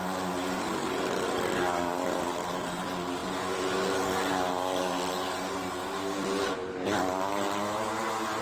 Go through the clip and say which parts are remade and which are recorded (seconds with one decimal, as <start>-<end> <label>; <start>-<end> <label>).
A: 0.0-8.4 recorded